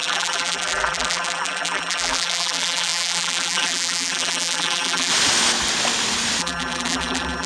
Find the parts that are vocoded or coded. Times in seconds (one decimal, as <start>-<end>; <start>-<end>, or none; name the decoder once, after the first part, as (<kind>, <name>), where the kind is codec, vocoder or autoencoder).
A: 0.0-5.1 (vocoder, BigVGAN v2); 6.4-7.5